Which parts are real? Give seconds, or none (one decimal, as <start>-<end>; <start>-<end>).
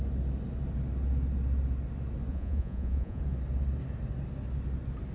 0.0-2.3; 3.2-5.1